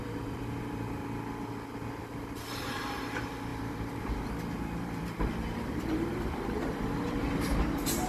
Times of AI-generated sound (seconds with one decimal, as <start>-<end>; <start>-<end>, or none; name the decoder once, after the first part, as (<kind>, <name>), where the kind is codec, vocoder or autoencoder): 0.0-1.0 (vocoder, BigVGAN v2); 2.0-8.1

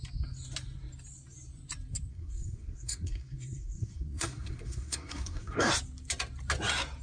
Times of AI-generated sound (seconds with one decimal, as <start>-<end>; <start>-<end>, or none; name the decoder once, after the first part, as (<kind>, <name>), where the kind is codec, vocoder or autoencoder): 2.1-5.7 (codec, SNAC)

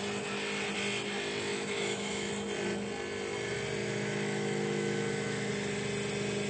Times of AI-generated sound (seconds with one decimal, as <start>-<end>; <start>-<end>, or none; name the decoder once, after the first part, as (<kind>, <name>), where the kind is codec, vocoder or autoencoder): 1.5-2.3 (autoencoder, DAC-VAE); 3.8-5.5